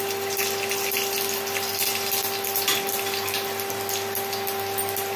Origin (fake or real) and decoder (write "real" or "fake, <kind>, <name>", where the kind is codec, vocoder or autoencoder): real